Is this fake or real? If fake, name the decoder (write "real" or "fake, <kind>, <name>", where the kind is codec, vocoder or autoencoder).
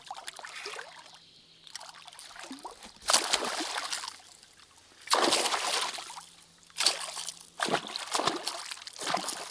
real